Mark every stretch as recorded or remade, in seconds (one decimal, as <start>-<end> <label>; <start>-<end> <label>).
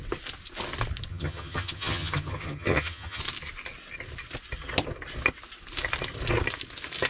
0.0-1.1 recorded; 1.1-3.2 remade; 3.2-7.1 recorded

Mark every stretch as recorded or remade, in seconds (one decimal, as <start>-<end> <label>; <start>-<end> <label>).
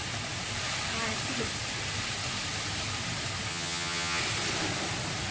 0.0-3.5 recorded; 3.5-4.2 remade; 4.2-5.3 recorded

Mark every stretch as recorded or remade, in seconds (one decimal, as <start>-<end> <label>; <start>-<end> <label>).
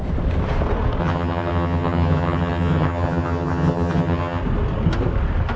0.0-1.0 recorded; 1.0-4.4 remade; 4.4-5.6 recorded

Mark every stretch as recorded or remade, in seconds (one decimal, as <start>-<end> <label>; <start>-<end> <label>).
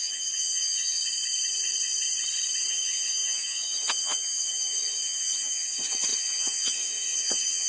0.0-1.0 remade; 1.0-2.7 recorded; 2.7-7.7 remade